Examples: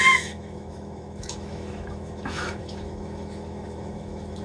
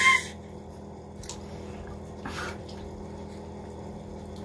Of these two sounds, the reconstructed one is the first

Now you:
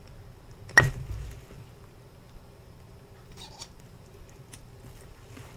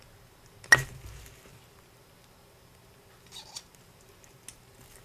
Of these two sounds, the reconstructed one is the first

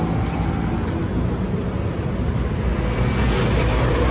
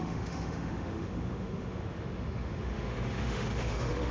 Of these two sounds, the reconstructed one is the second